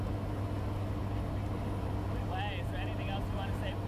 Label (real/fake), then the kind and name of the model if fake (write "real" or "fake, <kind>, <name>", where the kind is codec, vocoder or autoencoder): real